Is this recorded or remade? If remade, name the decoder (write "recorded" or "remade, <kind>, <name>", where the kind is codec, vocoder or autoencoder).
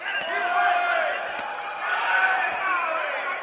recorded